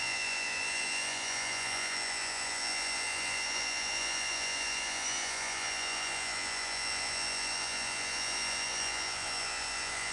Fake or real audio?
fake